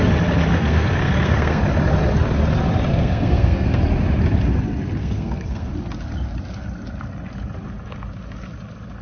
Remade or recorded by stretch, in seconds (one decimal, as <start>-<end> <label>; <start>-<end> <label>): 0.0-0.5 recorded; 0.5-1.6 remade; 1.6-2.9 recorded; 2.9-3.8 remade; 3.8-5.0 recorded; 5.0-5.7 remade; 5.7-9.0 recorded